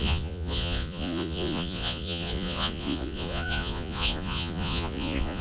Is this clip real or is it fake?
fake